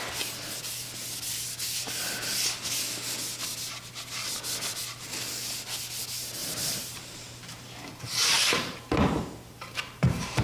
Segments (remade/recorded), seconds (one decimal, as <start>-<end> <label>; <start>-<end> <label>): 0.0-6.4 recorded; 6.4-10.4 remade